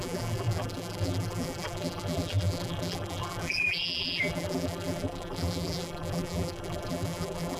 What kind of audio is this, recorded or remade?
remade